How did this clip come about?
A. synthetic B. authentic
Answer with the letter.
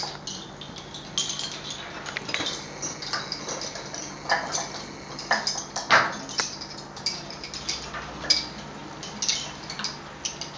B